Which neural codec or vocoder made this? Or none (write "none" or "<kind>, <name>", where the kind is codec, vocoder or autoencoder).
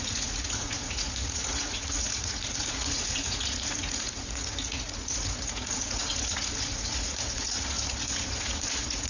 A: vocoder, Vocos